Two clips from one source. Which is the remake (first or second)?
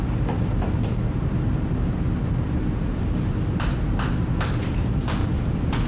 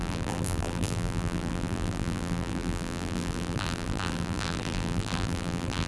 second